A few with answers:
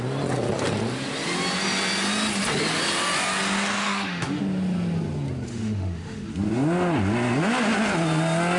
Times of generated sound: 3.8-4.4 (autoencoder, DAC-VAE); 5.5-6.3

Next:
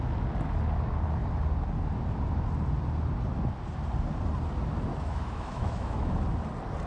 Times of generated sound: 4.9-6.1 (autoencoder, DAC-VAE)